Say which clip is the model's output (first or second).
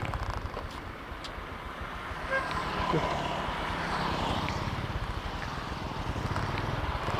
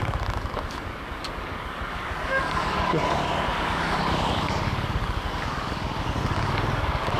second